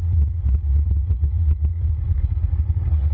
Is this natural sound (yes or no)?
no